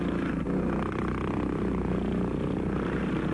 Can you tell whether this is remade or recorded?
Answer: recorded